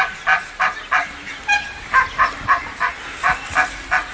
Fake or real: real